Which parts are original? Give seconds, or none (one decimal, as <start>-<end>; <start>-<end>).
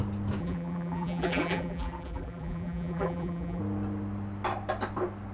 0.0-0.4; 3.6-5.3